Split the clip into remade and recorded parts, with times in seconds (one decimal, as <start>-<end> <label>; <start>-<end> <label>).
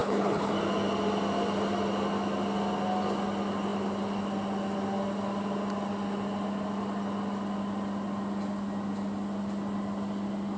0.0-0.5 remade; 0.5-10.6 recorded